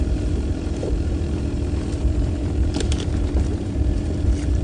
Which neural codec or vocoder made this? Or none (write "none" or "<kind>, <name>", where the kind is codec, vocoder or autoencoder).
vocoder, BigVGAN v2